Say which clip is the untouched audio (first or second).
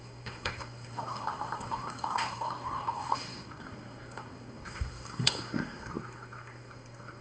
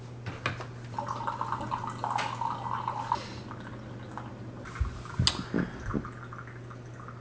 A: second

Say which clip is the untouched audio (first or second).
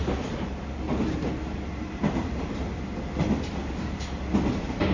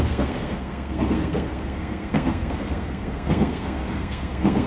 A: first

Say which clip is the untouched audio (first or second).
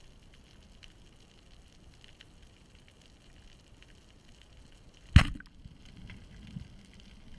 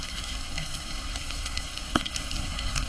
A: first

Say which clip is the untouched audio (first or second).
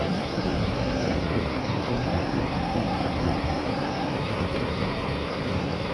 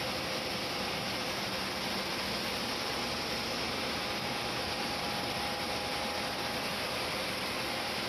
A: second